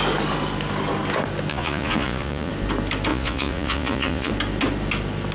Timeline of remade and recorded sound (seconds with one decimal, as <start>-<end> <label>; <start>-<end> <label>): 0.0-1.5 recorded; 1.5-2.5 remade; 2.5-3.1 recorded; 3.1-4.3 remade; 4.3-5.3 recorded